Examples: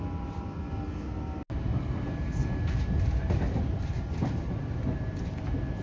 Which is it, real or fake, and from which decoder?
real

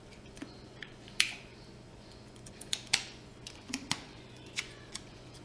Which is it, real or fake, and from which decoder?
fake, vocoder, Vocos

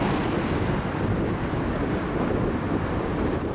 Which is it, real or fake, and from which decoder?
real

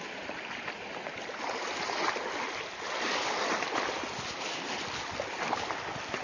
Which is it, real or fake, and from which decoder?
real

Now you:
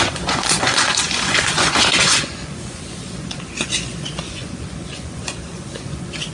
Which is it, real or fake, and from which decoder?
fake, vocoder, Vocos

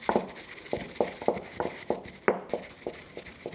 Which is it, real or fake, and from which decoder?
real